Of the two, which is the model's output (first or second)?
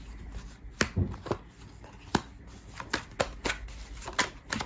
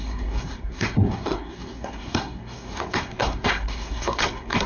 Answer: second